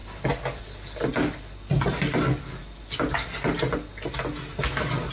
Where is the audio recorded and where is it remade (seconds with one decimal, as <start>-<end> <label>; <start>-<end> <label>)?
0.0-5.1 recorded